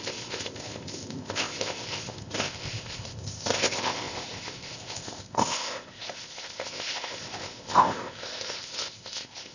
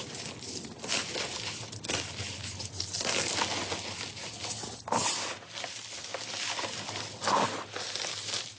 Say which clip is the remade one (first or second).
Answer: first